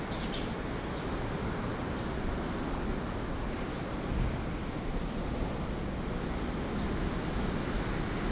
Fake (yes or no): no